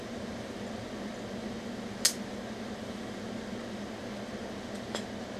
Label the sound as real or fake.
real